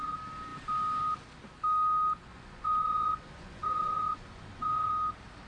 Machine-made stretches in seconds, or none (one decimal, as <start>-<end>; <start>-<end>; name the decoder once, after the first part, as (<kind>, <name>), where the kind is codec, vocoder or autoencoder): 2.3-4.9 (vocoder, Vocos)